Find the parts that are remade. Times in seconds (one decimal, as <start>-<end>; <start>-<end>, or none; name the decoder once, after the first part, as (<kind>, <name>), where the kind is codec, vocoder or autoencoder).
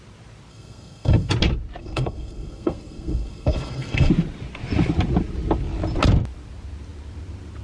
0.5-1.3 (codec, SNAC); 1.8-4.1